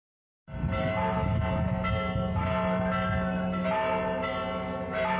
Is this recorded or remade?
recorded